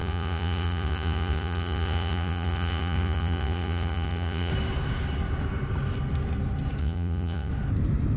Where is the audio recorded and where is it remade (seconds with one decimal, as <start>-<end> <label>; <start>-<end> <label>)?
0.0-4.5 remade; 4.5-6.8 recorded; 6.8-7.5 remade; 7.5-8.2 recorded